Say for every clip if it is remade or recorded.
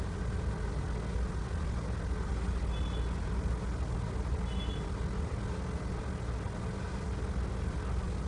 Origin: recorded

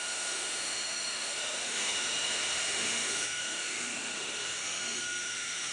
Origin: remade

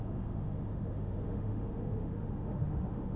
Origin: remade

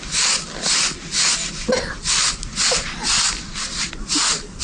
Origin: recorded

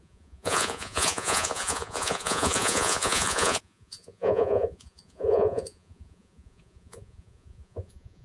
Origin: remade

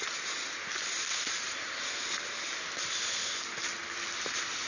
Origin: recorded